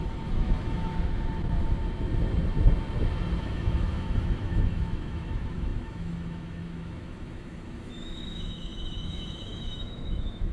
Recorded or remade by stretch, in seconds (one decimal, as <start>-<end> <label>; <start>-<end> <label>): 0.0-0.9 remade; 0.9-3.4 recorded; 3.4-10.5 remade